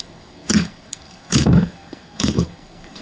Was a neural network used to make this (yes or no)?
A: yes